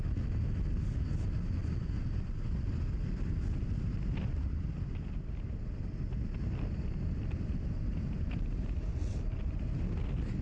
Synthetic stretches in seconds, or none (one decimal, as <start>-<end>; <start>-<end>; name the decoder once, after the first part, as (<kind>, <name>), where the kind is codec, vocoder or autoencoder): none